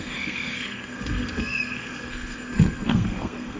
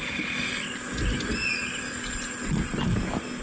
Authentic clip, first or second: second